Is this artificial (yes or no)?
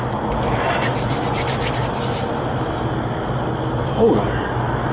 no